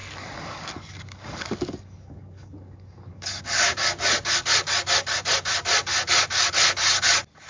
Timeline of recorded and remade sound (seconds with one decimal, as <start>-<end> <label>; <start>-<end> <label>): 0.0-3.4 remade; 3.4-7.5 recorded